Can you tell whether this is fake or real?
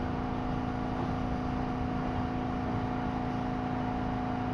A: real